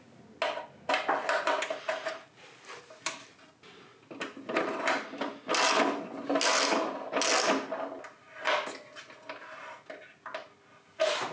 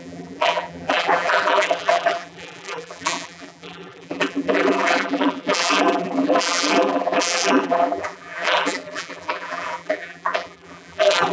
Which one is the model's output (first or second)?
second